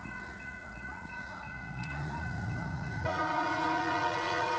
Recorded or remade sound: remade